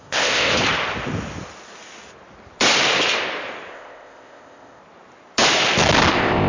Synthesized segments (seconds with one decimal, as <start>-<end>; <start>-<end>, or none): 0.0-0.5; 3.7-4.8; 6.1-6.5